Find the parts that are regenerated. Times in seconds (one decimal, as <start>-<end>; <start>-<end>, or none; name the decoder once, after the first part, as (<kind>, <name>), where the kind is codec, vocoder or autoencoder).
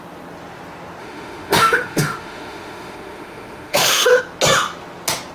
1.0-4.2 (autoencoder, DAC-VAE)